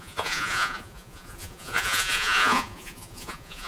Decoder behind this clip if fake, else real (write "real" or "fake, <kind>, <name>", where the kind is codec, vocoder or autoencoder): fake, vocoder, Vocos